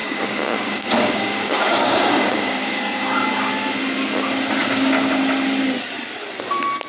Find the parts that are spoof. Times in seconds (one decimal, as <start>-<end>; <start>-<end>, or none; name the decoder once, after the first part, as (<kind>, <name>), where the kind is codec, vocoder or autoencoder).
0.0-2.8 (codec, DAC); 4.6-5.2